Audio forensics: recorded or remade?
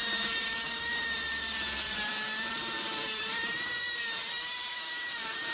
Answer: remade